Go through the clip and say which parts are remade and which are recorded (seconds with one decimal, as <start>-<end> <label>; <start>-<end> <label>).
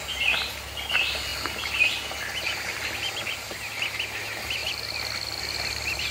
0.0-4.6 remade; 4.6-6.1 recorded